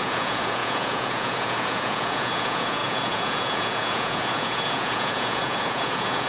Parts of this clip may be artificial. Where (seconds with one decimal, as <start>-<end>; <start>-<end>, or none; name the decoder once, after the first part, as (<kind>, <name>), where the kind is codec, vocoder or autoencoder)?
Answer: 0.0-6.3 (vocoder, Vocos)